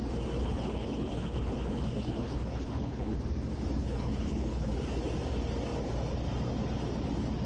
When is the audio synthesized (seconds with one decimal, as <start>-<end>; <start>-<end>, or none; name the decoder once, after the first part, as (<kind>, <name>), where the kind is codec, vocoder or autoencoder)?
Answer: 0.4-3.2 (codec, HILCodec); 3.8-4.7